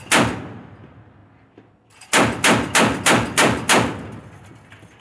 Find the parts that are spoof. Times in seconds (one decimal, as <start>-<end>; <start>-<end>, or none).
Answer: none